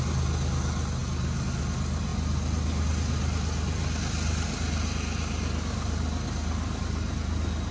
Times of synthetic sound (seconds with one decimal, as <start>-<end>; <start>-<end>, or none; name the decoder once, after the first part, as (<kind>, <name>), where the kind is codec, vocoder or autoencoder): none